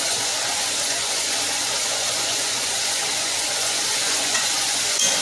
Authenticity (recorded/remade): remade